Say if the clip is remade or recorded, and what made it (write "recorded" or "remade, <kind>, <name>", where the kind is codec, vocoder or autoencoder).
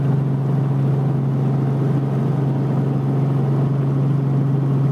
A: recorded